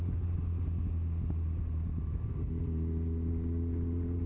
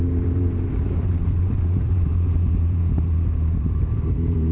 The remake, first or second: second